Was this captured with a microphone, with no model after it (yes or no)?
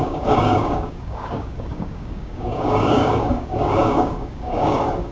no